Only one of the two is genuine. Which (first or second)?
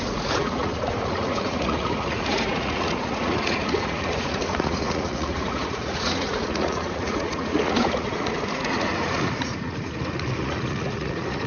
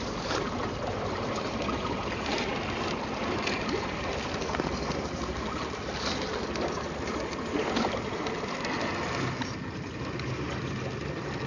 second